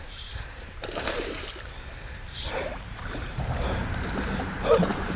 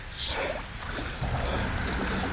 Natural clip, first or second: second